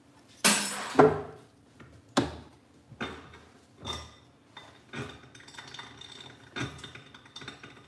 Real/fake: real